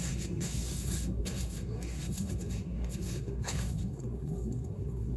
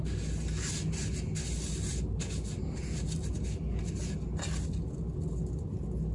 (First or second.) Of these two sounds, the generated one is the first